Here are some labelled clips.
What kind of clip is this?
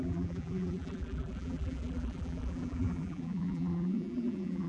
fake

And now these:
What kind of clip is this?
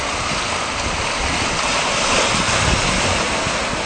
fake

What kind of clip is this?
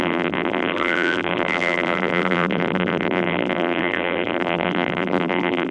fake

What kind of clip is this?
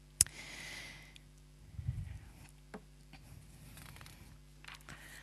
real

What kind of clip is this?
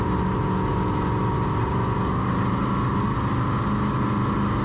real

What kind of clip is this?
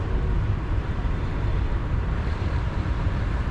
fake